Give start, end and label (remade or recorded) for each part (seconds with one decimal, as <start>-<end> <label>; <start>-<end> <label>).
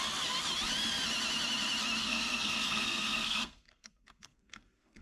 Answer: 0.0-2.0 recorded; 2.0-5.0 remade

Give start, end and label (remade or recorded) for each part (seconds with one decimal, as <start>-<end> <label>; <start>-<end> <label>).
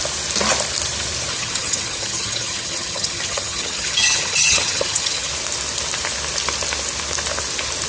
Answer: 0.0-1.3 recorded; 1.3-5.3 remade; 5.3-7.9 recorded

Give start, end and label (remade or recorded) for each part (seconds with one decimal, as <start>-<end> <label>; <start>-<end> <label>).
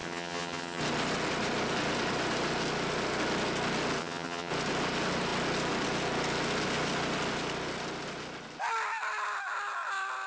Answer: 0.0-0.8 remade; 0.8-4.0 recorded; 4.0-4.5 remade; 4.5-10.3 recorded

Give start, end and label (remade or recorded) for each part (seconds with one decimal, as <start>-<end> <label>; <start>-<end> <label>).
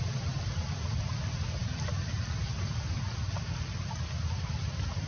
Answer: 0.0-5.1 recorded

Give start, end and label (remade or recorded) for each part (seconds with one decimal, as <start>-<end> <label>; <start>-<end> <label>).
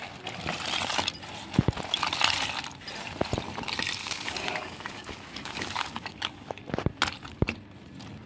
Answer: 0.0-4.0 recorded; 4.0-6.6 remade; 6.6-8.3 recorded